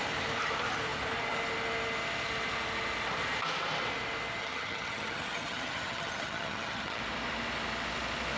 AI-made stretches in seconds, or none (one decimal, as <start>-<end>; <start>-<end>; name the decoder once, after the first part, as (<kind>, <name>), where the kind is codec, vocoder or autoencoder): 4.4-7.0 (vocoder, HiFi-GAN)

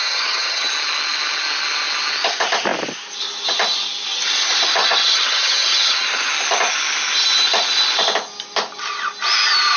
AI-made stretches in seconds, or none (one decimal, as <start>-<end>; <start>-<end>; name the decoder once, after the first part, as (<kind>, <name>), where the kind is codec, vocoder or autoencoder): 0.0-0.7 (vocoder, HiFi-GAN); 4.8-6.3

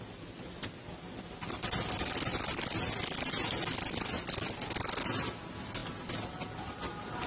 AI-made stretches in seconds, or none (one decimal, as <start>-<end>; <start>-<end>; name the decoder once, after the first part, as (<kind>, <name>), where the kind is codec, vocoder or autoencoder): none

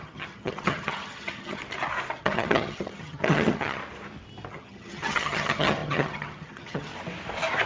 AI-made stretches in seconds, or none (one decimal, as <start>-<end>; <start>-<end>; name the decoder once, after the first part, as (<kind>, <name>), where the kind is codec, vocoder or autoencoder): 0.0-1.6 (vocoder, HiFi-GAN); 2.2-3.8; 4.5-6.9

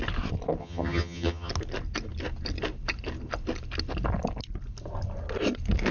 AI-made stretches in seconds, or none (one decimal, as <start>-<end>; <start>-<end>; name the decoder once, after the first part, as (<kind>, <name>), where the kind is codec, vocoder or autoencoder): 0.6-1.5 (vocoder, HiFi-GAN)